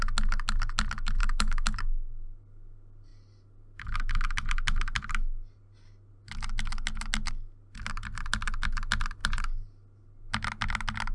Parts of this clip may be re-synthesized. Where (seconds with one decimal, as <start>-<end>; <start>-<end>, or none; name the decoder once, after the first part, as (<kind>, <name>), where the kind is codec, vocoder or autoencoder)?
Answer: 1.2-1.8 (autoencoder, DAC-VAE)